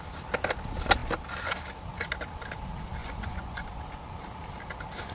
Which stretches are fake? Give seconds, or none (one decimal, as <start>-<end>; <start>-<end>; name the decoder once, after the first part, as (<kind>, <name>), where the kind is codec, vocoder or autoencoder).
3.0-4.0 (vocoder, Vocos)